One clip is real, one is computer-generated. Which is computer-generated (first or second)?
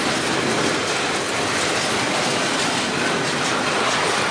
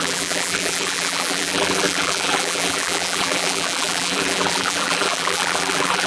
second